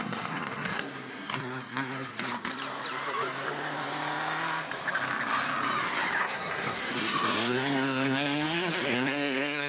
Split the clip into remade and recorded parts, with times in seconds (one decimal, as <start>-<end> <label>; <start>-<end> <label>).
0.0-2.1 remade; 2.1-6.2 recorded; 6.2-9.7 remade